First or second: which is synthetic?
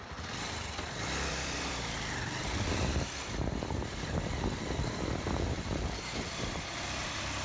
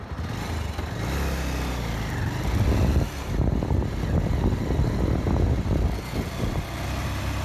first